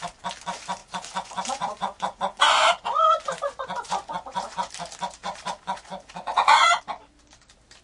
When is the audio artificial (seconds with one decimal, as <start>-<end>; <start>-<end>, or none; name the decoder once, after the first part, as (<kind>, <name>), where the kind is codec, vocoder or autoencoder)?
0.8-4.7 (vocoder, Vocos); 5.2-6.8